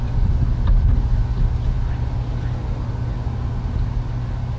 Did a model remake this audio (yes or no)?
no